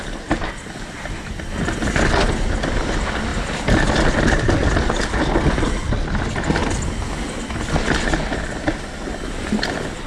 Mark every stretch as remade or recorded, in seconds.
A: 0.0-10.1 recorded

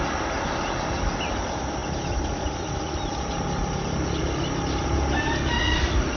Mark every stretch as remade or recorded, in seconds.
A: 0.0-6.2 recorded

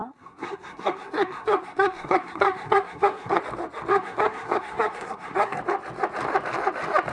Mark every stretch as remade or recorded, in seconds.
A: 0.0-3.4 remade; 3.4-3.9 recorded; 3.9-5.6 remade; 5.6-7.1 recorded

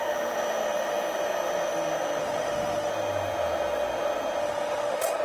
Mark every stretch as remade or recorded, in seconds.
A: 0.0-2.2 recorded; 2.2-2.9 remade; 2.9-4.4 recorded; 4.4-5.2 remade

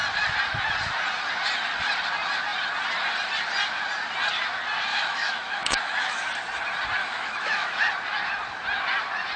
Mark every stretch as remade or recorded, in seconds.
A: 0.0-4.9 recorded; 4.9-6.2 remade; 6.2-7.0 recorded; 7.0-7.8 remade; 7.8-9.4 recorded